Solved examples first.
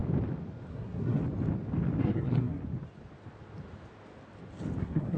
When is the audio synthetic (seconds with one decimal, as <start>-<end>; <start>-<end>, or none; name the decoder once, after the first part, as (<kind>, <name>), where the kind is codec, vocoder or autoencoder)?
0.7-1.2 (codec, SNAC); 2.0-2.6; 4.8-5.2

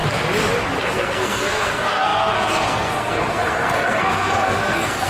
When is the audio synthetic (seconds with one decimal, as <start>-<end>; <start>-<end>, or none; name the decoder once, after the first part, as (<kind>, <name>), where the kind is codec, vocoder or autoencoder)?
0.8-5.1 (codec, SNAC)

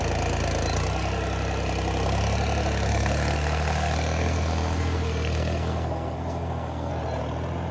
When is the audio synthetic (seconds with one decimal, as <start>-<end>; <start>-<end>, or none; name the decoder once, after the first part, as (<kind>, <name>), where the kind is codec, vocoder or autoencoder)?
2.9-6.9 (codec, SNAC)

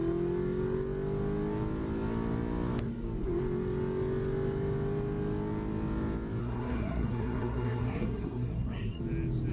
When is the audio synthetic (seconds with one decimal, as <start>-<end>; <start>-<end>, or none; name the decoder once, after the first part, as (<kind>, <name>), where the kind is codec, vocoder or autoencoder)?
6.4-9.0 (codec, SNAC)

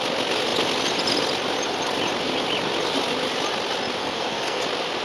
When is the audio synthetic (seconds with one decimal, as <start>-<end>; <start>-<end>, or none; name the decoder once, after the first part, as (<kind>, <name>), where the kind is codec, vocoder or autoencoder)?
4.0-4.6 (codec, SNAC)

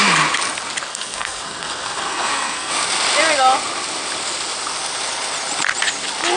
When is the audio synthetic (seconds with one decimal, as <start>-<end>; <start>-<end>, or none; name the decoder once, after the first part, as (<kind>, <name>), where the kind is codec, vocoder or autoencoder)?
0.9-2.7 (codec, SNAC)